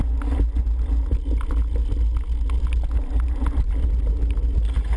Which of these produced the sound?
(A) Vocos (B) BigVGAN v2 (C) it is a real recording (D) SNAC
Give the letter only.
C